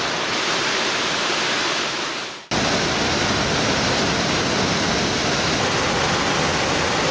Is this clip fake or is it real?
real